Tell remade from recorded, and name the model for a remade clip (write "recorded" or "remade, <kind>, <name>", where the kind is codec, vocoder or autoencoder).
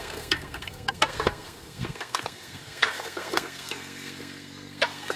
remade, codec, SNAC